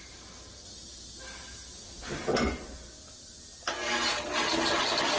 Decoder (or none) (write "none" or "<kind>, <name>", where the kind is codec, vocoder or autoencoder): none